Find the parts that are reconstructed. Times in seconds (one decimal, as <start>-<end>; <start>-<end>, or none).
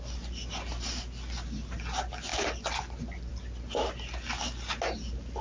none